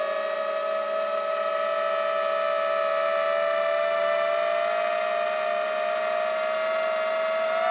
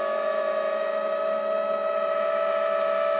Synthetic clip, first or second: second